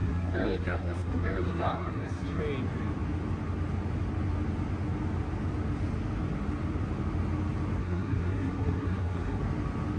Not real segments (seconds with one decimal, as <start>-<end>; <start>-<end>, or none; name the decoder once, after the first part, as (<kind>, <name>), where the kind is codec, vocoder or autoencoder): 0.0-2.4 (codec, SNAC); 7.8-9.4